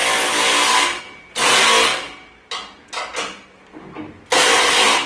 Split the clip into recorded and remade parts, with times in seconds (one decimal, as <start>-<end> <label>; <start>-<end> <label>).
0.0-5.1 recorded